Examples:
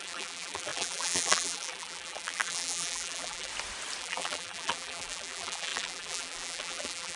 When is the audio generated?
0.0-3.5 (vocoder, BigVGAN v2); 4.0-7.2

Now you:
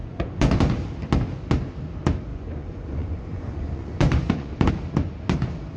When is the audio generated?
0.0-0.6 (vocoder, Vocos); 2.3-4.7

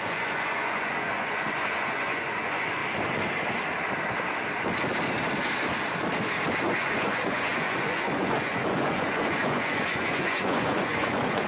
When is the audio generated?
0.0-2.8 (vocoder, Vocos); 6.6-11.5

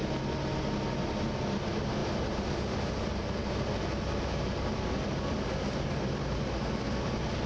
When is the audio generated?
none